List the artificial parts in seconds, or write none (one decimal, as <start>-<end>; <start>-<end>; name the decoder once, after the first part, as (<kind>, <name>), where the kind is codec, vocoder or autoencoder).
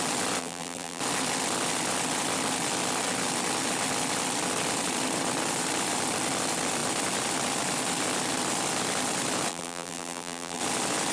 0.4-1.0 (vocoder, BigVGAN v2); 9.5-10.6